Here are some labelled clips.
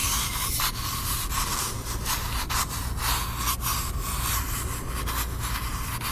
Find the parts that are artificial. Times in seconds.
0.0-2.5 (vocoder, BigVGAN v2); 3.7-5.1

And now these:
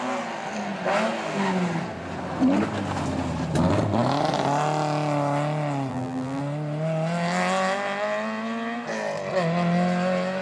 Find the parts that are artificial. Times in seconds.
5.9-6.4 (vocoder, BigVGAN v2)

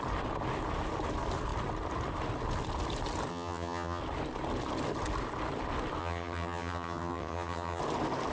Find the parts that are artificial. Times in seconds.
3.3-4.0 (vocoder, HiFi-GAN); 6.0-7.8

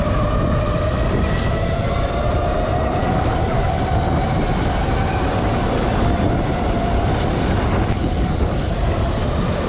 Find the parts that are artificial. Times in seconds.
3.0-3.8 (codec, DAC); 8.0-9.1

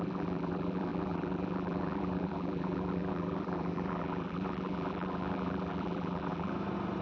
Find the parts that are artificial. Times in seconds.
0.0-6.5 (vocoder, BigVGAN v2)

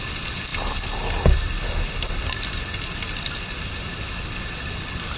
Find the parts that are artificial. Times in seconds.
none